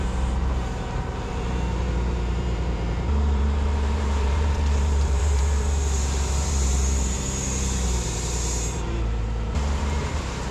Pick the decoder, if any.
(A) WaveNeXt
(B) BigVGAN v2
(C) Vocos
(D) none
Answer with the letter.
B